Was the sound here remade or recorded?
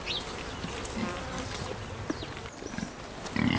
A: recorded